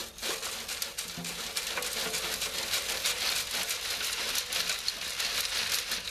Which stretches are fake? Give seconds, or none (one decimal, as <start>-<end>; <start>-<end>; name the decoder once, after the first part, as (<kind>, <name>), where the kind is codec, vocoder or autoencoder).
none